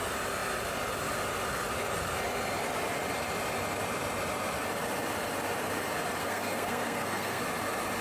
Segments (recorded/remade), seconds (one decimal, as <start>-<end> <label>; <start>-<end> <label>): 0.0-6.2 recorded; 6.2-7.4 remade; 7.4-8.0 recorded